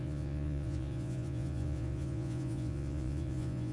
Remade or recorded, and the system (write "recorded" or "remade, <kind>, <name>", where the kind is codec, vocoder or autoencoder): remade, vocoder, Vocos